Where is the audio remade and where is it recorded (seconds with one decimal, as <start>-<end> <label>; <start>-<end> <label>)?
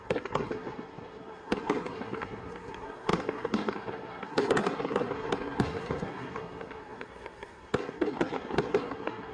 0.0-9.3 remade